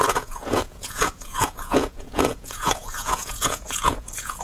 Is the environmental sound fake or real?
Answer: fake